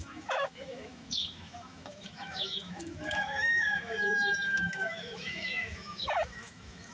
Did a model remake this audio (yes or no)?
yes